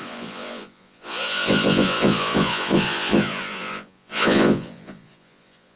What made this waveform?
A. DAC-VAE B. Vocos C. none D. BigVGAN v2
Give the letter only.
B